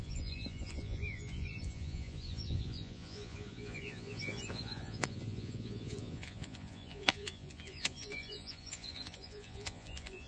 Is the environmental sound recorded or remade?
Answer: remade